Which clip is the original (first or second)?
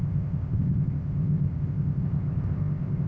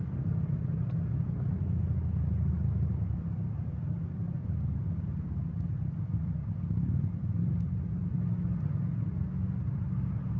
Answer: second